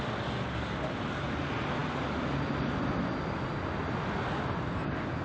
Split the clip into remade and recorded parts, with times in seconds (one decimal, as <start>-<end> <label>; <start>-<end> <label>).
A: 0.0-5.2 recorded